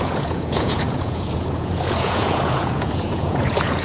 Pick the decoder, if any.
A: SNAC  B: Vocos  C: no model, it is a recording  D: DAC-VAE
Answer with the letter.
B